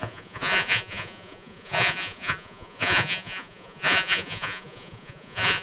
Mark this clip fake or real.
fake